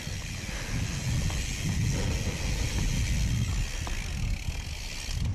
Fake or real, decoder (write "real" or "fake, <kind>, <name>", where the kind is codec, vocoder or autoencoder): real